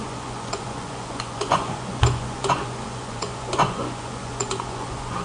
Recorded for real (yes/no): no